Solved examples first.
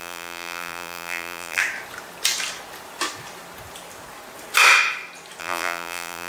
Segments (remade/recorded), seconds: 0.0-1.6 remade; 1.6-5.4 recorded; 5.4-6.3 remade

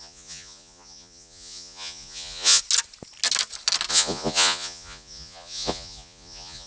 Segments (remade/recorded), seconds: 0.0-2.6 remade; 2.6-3.9 recorded; 3.9-6.7 remade

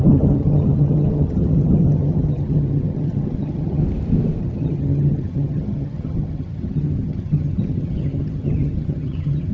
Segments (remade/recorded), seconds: 0.0-3.8 remade; 3.8-4.4 recorded; 4.4-9.5 remade

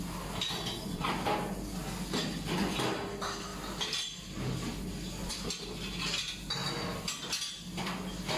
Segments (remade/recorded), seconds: 0.0-8.4 recorded

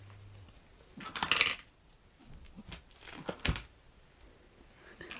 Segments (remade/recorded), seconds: 0.0-5.2 recorded

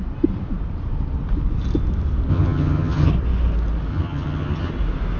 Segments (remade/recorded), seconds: 0.0-2.3 recorded; 2.3-3.1 remade; 3.1-3.9 recorded; 3.9-4.7 remade; 4.7-5.2 recorded